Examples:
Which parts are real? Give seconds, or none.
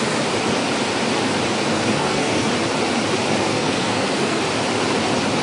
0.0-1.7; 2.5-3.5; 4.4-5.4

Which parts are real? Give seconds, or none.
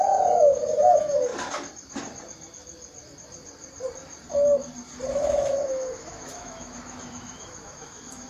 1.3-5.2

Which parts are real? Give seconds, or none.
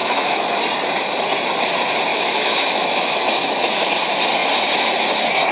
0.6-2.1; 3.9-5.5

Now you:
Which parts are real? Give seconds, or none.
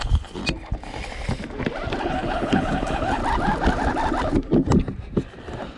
0.4-2.0; 3.2-5.8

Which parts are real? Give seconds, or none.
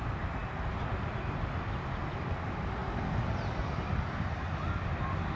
0.0-5.4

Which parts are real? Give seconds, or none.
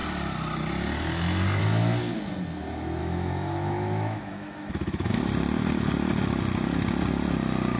0.0-3.0; 5.2-7.8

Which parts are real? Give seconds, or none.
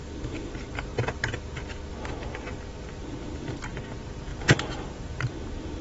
0.0-4.3; 5.2-5.8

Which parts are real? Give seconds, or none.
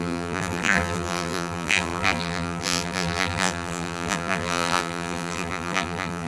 none